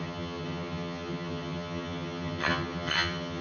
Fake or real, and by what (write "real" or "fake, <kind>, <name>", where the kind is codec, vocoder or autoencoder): fake, vocoder, HiFi-GAN